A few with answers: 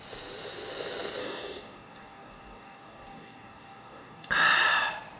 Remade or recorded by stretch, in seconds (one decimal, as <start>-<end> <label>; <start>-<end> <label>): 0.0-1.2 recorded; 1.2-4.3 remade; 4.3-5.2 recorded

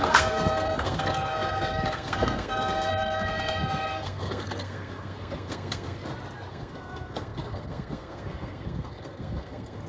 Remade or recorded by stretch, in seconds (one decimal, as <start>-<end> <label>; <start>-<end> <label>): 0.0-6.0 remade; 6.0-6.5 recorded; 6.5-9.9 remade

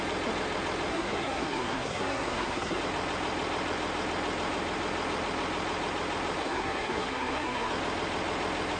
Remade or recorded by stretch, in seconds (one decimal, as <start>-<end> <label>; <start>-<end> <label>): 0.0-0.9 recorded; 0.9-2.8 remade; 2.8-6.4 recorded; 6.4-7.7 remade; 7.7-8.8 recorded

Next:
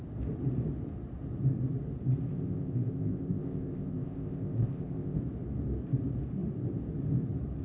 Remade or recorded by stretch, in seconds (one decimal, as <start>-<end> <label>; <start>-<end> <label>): 0.0-2.3 recorded; 2.3-5.2 remade; 5.2-7.6 recorded

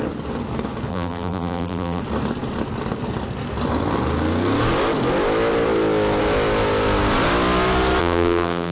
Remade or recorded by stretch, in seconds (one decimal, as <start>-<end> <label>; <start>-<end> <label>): 0.0-0.9 recorded; 0.9-2.0 remade; 2.0-8.0 recorded; 8.0-8.7 remade